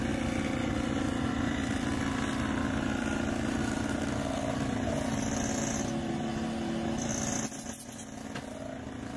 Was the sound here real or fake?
real